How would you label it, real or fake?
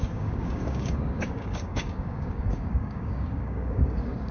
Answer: fake